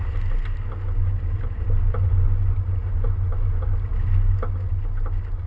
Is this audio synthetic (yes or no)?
no